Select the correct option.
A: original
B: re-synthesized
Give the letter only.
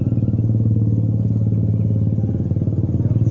A